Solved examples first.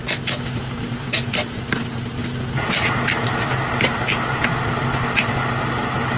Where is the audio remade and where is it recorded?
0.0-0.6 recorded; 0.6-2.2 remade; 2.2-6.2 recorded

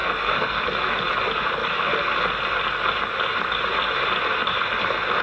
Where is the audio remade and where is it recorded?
0.0-0.6 remade; 0.6-5.2 recorded

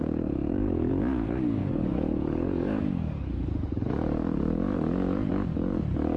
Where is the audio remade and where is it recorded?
0.0-6.2 remade